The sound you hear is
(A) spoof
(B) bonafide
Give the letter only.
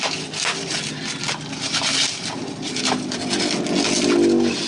B